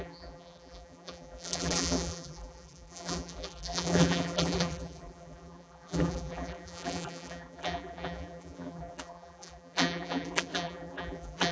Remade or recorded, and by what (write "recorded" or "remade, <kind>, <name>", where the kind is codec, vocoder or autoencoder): remade, vocoder, BigVGAN v2